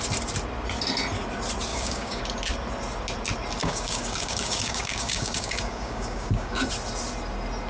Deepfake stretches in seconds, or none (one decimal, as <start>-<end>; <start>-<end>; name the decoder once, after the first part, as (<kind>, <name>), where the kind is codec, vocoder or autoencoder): 1.7-2.2 (codec, DAC); 3.6-6.7